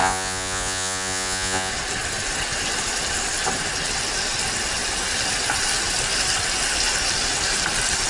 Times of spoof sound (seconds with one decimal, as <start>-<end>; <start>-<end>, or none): 0.0-1.7